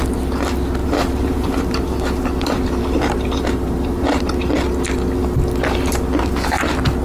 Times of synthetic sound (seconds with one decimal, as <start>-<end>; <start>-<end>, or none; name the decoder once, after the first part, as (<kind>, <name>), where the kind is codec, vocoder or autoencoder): 0.8-4.2 (vocoder, BigVGAN v2)